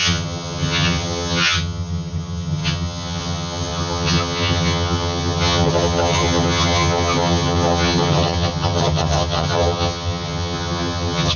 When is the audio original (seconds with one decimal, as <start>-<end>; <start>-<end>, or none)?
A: none